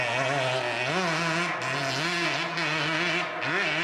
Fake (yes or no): no